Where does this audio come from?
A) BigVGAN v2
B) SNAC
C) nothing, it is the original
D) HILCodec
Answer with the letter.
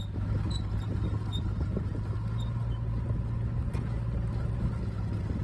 C